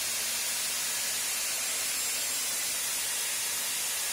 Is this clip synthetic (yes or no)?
no